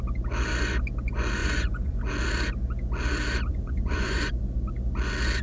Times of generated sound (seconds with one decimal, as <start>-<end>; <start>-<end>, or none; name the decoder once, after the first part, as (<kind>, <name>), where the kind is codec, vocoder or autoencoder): 1.4-2.0 (vocoder, Vocos); 3.5-4.3